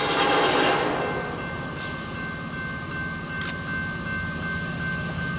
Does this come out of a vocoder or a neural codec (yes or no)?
no